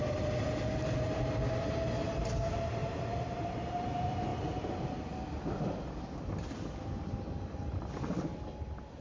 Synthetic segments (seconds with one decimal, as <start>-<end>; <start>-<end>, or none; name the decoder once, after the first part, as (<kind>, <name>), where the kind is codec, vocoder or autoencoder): 2.8-3.6 (vocoder, BigVGAN v2)